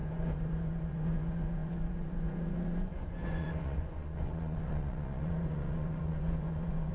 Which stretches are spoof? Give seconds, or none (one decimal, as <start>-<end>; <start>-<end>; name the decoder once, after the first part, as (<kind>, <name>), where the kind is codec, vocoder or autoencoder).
0.0-6.9 (vocoder, Vocos)